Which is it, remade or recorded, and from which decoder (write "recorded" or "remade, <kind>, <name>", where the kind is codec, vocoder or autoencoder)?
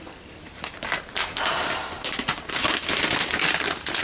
remade, vocoder, BigVGAN v2